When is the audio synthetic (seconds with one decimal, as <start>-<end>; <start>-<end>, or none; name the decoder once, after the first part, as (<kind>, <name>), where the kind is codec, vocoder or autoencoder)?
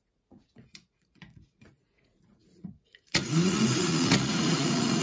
0.0-5.0 (vocoder, Vocos)